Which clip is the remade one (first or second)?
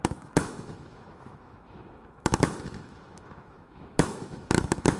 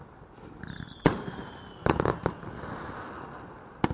first